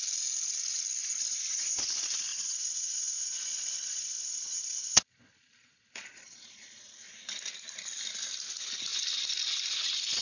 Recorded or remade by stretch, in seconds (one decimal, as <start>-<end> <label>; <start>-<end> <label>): 0.0-1.0 recorded; 1.0-1.8 remade; 1.8-2.3 recorded; 2.3-6.9 remade; 6.9-10.2 recorded